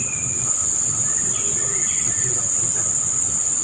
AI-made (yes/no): no